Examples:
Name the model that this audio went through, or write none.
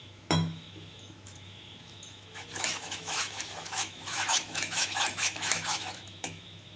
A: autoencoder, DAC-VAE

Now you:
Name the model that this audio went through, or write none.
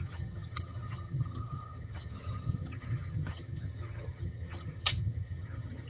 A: vocoder, HiFi-GAN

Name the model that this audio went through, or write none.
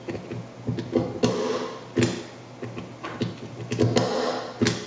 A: none